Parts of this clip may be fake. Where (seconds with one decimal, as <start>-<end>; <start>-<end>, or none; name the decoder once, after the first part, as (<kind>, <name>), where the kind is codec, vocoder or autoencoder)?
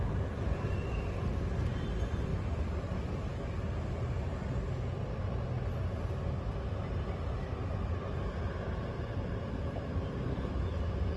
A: 0.0-4.3 (vocoder, BigVGAN v2); 7.0-11.2